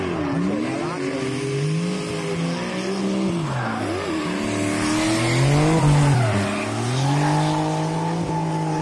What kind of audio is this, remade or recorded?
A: recorded